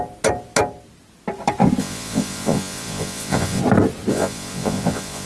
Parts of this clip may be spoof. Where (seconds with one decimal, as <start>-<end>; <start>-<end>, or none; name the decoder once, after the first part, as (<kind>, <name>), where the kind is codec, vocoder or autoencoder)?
1.8-3.6 (vocoder, Vocos); 4.1-5.3